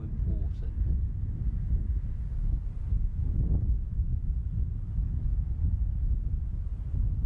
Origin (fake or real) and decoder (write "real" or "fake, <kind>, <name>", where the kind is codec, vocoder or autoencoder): real